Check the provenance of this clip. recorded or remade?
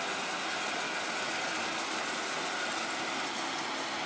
recorded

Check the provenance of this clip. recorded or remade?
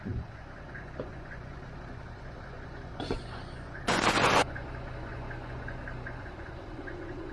remade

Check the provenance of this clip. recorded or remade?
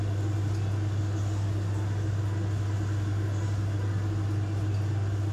recorded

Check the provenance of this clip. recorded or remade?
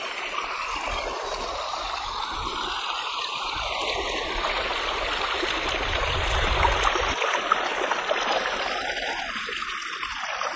recorded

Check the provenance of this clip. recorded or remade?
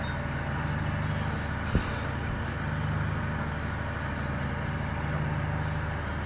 recorded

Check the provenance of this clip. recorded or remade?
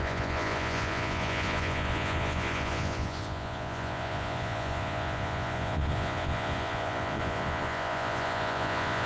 remade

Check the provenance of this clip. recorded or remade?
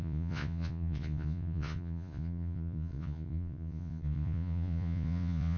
remade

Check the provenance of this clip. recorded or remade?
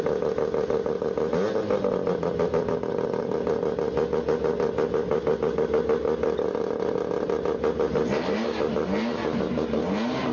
recorded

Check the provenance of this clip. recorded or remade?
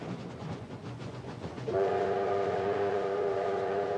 remade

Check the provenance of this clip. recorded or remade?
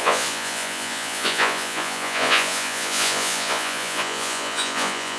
remade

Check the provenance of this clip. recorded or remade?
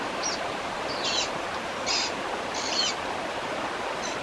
recorded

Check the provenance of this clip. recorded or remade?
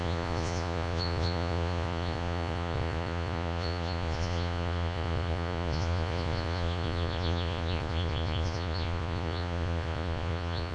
remade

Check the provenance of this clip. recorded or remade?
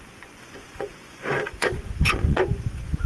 remade